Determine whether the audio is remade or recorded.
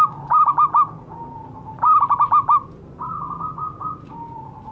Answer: recorded